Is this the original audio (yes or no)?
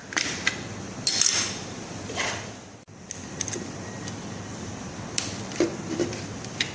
no